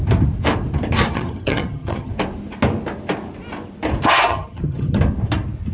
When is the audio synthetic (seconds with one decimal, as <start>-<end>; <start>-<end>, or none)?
1.1-2.1; 4.3-5.0